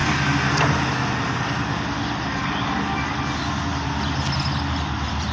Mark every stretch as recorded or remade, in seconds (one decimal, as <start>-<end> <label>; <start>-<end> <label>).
0.0-5.3 recorded